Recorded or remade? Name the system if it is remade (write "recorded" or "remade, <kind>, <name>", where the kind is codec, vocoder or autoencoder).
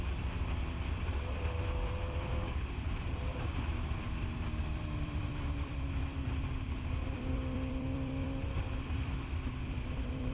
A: remade, vocoder, BigVGAN v2